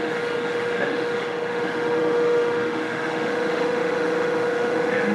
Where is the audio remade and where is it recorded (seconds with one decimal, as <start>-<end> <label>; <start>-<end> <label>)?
0.0-5.1 remade